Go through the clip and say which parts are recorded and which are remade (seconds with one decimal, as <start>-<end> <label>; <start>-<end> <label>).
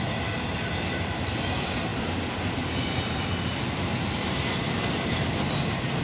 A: 0.0-6.0 recorded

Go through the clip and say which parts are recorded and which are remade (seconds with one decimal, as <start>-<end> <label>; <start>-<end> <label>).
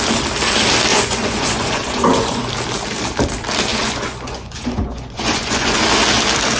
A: 0.0-0.9 recorded; 0.9-2.4 remade; 2.4-3.7 recorded; 3.7-5.8 remade; 5.8-6.6 recorded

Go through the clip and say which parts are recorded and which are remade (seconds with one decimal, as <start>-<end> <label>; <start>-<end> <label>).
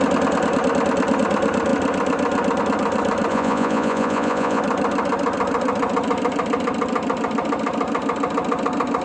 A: 0.0-3.3 recorded; 3.3-4.6 remade; 4.6-9.0 recorded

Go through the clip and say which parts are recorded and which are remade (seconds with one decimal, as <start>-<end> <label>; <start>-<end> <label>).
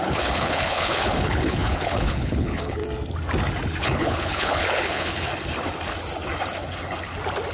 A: 0.0-2.8 remade; 2.8-3.8 recorded; 3.8-5.3 remade; 5.3-7.5 recorded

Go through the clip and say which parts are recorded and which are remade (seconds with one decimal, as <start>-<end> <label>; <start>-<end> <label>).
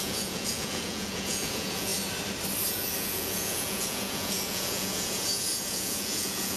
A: 0.0-1.9 remade; 1.9-2.7 recorded; 2.7-6.6 remade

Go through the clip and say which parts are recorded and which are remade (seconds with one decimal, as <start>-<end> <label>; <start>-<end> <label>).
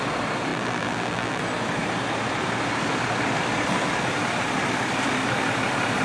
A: 0.0-0.5 recorded; 0.5-1.4 remade; 1.4-6.0 recorded